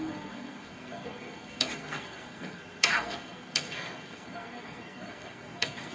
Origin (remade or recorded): remade